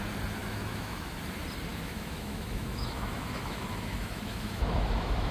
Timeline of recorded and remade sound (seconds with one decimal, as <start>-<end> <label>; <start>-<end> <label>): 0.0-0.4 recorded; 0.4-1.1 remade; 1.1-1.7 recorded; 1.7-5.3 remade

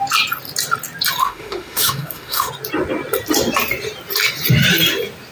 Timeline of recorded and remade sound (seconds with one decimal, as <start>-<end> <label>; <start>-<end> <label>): 0.0-1.2 recorded; 1.2-2.5 remade; 2.5-5.3 recorded

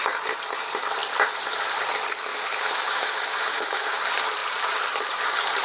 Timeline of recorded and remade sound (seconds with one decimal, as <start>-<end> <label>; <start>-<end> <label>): 0.0-2.3 recorded; 2.3-4.0 remade; 4.0-5.6 recorded

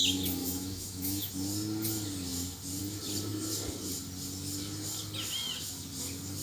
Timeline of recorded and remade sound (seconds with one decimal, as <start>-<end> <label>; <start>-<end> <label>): 0.0-0.4 recorded; 0.4-1.3 remade; 1.3-6.4 recorded